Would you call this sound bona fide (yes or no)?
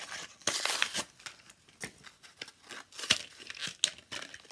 yes